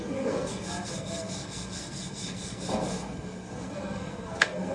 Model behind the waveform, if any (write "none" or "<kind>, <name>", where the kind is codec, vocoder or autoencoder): codec, SNAC